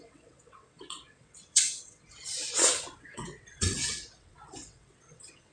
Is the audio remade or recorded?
remade